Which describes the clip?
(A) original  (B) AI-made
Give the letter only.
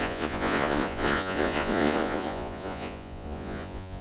B